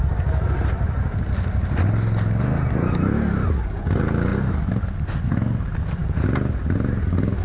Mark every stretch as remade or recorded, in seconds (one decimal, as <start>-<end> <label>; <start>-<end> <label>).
0.0-1.2 remade; 1.2-7.4 recorded